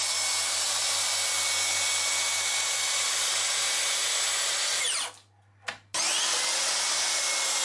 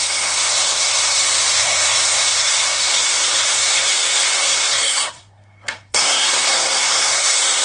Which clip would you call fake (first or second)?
second